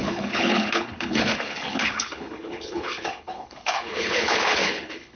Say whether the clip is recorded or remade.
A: remade